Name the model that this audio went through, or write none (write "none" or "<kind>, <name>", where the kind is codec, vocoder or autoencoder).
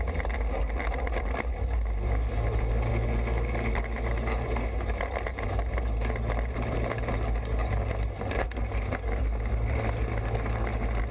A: none